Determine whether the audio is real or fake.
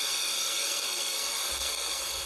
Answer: fake